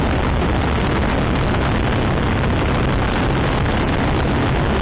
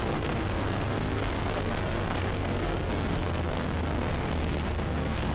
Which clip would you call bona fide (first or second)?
first